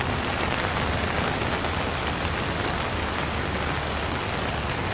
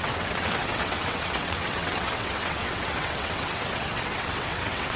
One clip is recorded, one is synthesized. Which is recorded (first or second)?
first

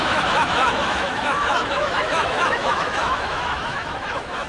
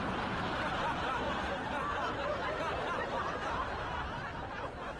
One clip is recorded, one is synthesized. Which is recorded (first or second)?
second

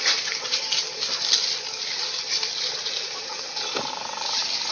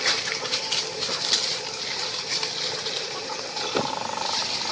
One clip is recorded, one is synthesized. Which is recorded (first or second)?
first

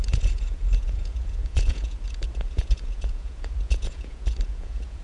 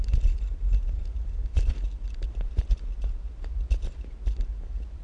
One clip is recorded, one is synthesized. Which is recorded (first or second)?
second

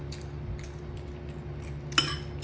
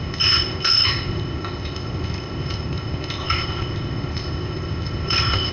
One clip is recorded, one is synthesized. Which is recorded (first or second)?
first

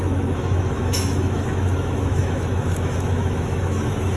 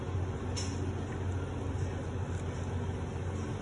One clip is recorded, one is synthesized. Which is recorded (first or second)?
second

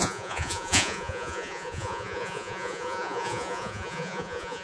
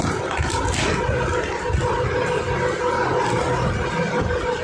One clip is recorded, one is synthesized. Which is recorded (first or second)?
second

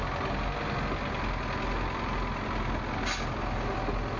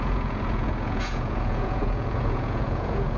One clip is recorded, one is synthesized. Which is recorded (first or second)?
first